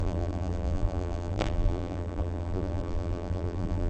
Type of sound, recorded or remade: remade